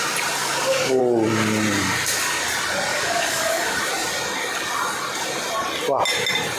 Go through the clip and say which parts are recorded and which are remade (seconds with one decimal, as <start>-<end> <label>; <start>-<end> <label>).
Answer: 0.0-0.4 recorded; 0.4-1.0 remade; 1.0-2.9 recorded; 2.9-3.8 remade; 3.8-6.6 recorded